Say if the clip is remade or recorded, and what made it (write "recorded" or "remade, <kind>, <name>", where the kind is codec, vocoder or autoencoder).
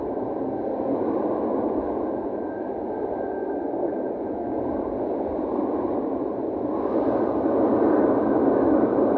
recorded